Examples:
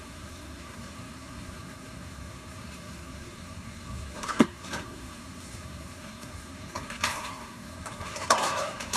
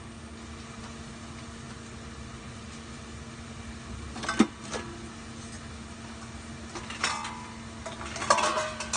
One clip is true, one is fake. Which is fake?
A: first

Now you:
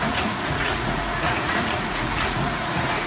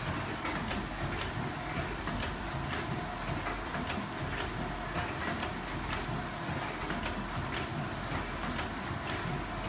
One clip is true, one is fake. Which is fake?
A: first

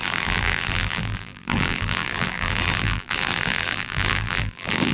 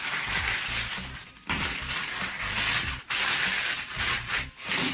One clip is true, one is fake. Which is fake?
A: first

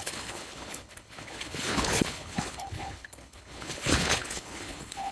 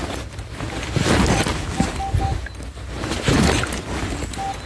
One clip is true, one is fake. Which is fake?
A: first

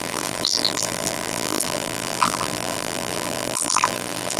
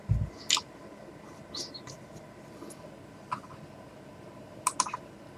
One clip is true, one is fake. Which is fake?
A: first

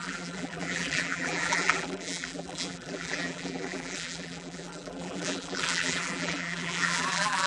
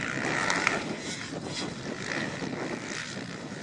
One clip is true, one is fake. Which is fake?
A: first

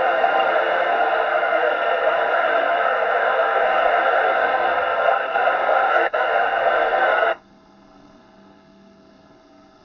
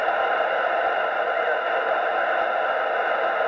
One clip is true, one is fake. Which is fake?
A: first